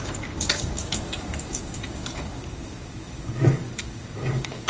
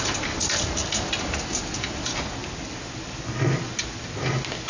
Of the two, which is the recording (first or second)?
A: second